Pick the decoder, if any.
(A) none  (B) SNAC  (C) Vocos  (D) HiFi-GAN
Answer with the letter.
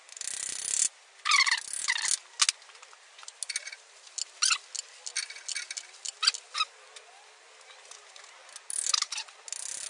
A